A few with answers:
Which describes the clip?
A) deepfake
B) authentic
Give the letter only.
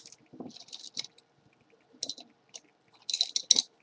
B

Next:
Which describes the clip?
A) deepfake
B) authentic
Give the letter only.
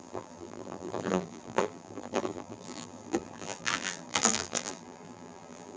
A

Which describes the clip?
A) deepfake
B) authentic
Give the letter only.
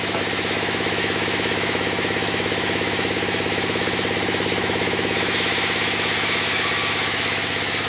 A